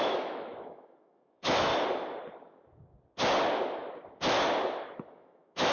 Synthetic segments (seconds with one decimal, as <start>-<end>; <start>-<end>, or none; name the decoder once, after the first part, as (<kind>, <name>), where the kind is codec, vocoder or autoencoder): 0.0-1.7 (autoencoder, DAC-VAE); 5.1-5.7